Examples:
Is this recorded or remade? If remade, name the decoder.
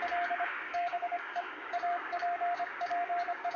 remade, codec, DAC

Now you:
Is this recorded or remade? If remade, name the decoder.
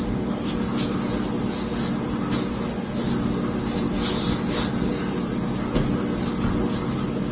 recorded